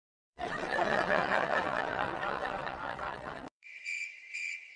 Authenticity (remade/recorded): remade